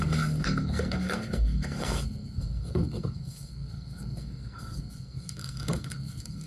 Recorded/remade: remade